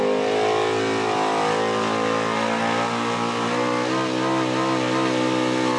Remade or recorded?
recorded